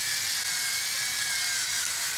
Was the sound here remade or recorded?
recorded